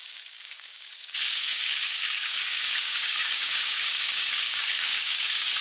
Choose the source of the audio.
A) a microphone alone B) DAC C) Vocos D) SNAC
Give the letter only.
B